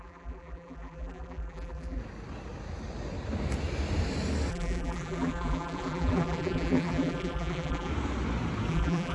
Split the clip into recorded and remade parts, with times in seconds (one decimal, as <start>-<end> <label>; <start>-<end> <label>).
0.0-2.0 remade; 2.0-4.5 recorded; 4.5-7.9 remade; 7.9-8.7 recorded; 8.7-9.1 remade